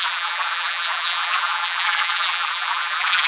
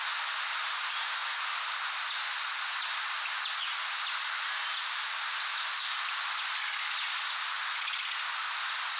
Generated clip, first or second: first